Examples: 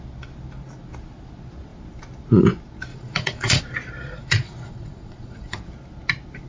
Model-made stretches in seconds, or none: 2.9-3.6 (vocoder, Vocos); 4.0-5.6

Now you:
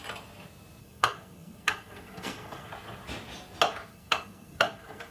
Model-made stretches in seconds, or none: 0.8-2.7 (codec, SNAC); 3.9-5.1

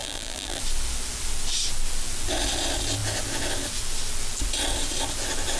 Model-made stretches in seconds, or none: 0.0-0.6 (vocoder, BigVGAN v2)

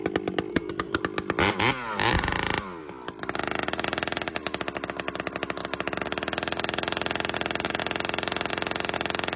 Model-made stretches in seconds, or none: 0.5-1.0 (codec, SNAC)

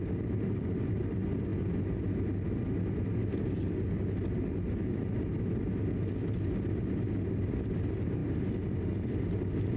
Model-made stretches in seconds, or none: 0.0-1.5 (vocoder, BigVGAN v2); 6.7-9.8

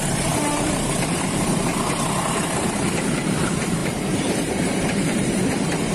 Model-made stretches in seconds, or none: 0.0-1.7 (vocoder, BigVGAN v2); 2.3-5.9

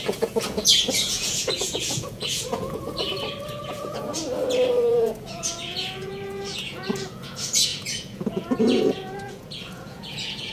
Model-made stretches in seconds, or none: 0.0-2.8 (vocoder, Vocos); 3.6-4.1; 4.9-10.5

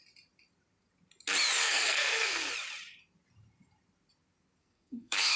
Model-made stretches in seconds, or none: 1.6-2.5 (codec, SNAC); 4.6-5.4